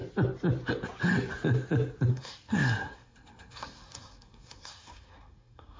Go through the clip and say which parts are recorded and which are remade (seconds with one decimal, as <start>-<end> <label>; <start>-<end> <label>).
0.0-2.1 recorded; 2.1-5.8 remade

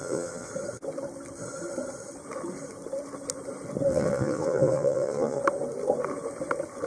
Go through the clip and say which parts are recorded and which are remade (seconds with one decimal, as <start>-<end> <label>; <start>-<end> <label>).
0.0-0.5 remade; 0.5-3.9 recorded; 3.9-5.4 remade; 5.4-6.9 recorded

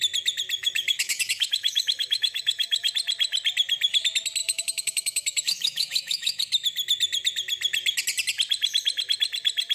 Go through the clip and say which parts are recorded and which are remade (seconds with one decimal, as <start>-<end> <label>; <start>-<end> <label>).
0.0-0.6 recorded; 0.6-2.9 remade; 2.9-4.4 recorded; 4.4-6.4 remade; 6.4-9.7 recorded

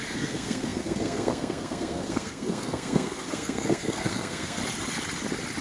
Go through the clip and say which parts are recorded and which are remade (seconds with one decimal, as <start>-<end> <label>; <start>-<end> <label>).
0.0-4.6 remade; 4.6-5.6 recorded

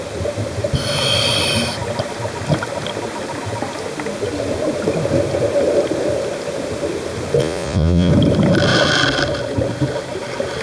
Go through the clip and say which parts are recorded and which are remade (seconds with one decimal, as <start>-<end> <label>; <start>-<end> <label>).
0.0-7.4 recorded; 7.4-8.1 remade; 8.1-10.6 recorded

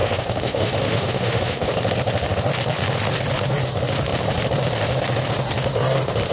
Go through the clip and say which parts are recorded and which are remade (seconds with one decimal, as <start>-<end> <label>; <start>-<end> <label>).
0.0-1.7 remade; 1.7-6.3 recorded